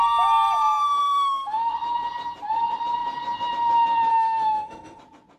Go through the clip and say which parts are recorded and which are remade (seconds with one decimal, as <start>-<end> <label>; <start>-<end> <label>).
0.0-1.0 recorded; 1.0-1.7 remade; 1.7-4.1 recorded; 4.1-5.0 remade; 5.0-5.4 recorded